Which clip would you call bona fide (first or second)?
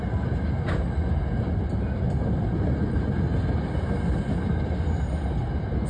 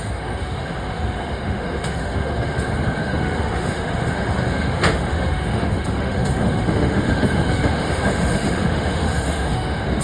first